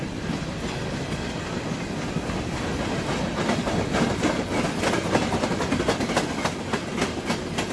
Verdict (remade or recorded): recorded